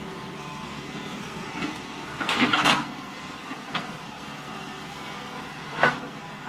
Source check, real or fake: fake